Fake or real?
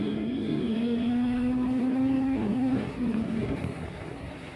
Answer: fake